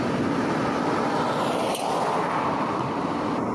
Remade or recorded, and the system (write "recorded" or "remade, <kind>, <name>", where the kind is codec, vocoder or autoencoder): recorded